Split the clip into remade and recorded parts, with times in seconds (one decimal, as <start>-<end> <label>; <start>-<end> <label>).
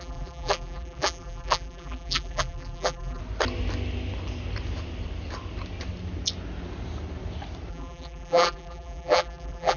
0.0-3.2 remade; 3.2-7.7 recorded; 7.7-9.8 remade